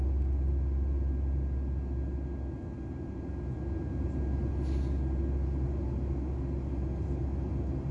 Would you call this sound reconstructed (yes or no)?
no